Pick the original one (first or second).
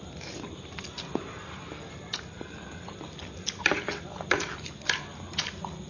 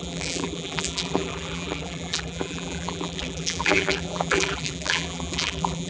first